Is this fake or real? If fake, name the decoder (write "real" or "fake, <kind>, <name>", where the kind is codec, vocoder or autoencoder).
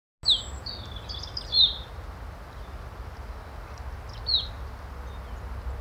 real